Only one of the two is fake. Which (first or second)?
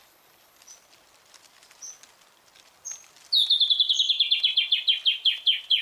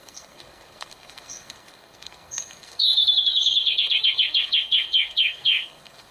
second